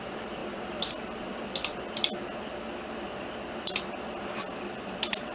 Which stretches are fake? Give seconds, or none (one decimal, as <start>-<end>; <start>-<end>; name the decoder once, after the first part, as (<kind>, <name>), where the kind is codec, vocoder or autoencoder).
0.4-0.9 (vocoder, BigVGAN v2)

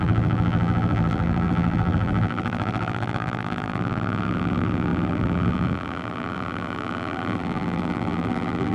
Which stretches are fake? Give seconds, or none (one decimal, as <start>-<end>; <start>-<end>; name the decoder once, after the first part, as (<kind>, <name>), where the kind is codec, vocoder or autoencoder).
0.0-8.7 (vocoder, BigVGAN v2)

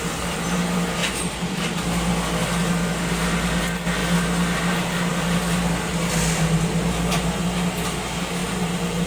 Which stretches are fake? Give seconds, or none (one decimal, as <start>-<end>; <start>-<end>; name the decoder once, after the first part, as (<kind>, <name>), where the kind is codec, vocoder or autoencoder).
8.4-9.1 (vocoder, BigVGAN v2)

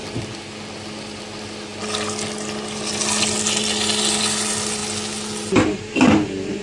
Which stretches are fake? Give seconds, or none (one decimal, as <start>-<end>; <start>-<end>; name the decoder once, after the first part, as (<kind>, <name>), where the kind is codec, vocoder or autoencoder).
none

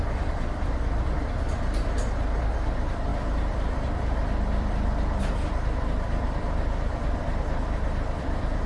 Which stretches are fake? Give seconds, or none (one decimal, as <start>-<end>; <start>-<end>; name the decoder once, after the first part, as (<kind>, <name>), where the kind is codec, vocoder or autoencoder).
0.0-8.7 (vocoder, BigVGAN v2)

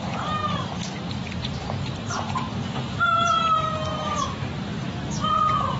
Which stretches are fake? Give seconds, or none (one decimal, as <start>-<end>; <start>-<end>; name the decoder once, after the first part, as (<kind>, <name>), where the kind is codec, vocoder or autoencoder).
0.4-2.7 (vocoder, BigVGAN v2); 3.9-5.1

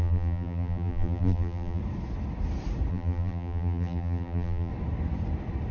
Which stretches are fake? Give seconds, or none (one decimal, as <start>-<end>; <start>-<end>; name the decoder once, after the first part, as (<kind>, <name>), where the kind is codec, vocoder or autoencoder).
0.0-1.8 (vocoder, BigVGAN v2); 2.9-4.7

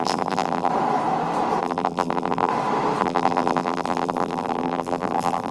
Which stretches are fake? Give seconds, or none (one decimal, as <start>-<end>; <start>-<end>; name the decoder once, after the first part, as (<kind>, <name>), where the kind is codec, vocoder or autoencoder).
0.0-0.7 (vocoder, BigVGAN v2); 1.6-2.5; 3.0-5.5